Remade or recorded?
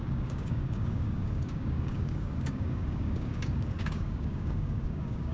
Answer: remade